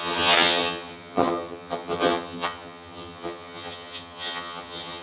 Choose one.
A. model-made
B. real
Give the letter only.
A